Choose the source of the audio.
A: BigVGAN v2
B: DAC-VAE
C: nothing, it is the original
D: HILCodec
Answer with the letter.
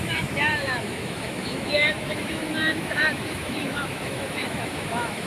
B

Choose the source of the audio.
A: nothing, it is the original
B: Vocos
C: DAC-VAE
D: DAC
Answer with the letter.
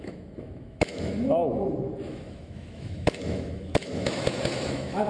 C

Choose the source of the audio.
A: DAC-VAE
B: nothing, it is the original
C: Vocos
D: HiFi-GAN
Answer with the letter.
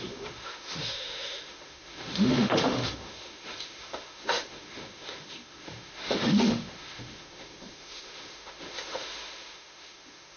A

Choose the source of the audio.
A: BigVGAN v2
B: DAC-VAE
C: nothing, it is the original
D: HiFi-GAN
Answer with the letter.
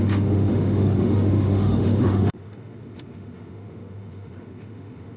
B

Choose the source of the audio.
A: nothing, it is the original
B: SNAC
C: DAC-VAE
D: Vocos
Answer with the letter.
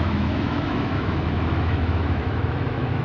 C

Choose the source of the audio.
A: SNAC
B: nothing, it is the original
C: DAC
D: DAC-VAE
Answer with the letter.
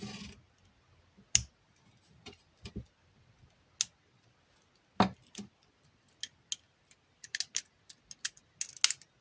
B